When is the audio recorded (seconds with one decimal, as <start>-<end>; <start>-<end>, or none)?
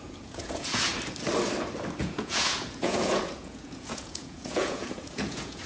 0.9-2.0